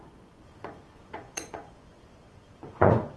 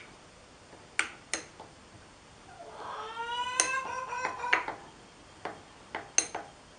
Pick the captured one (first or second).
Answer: second